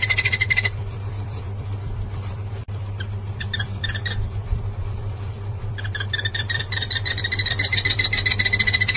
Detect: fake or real fake